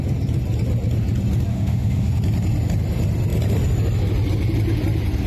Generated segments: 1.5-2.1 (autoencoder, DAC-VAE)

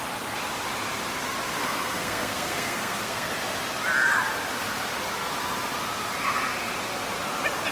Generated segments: 1.6-3.3 (codec, SNAC)

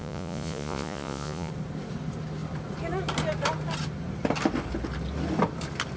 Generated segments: 0.0-1.5 (vocoder, Vocos)

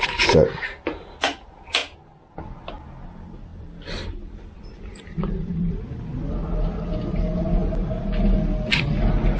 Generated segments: 3.5-5.9 (vocoder, BigVGAN v2)

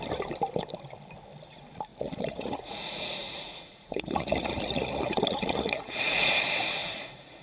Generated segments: 1.9-6.3 (vocoder, Vocos); 6.8-7.4

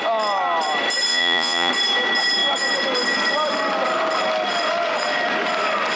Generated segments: 1.1-1.7 (vocoder, Vocos)

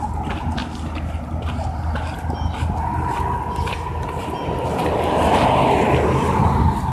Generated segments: none

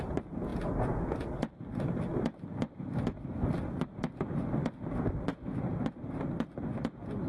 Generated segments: none